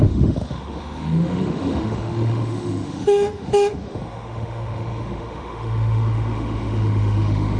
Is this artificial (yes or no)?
yes